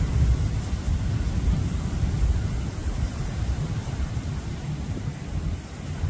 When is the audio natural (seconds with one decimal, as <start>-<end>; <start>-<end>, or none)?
0.0-2.8; 5.0-6.1